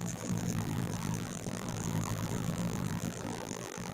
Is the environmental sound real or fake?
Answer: fake